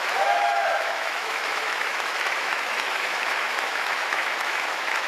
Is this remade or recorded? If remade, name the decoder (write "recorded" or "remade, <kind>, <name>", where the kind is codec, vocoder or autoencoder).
remade, autoencoder, DAC-VAE